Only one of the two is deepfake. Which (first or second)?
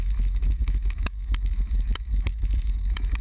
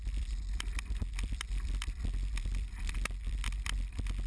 first